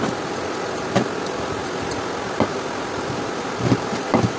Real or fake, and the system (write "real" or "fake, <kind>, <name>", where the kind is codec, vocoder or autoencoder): real